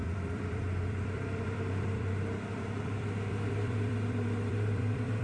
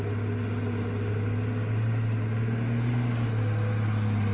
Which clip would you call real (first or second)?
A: second